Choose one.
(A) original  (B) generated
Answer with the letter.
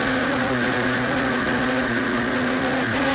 B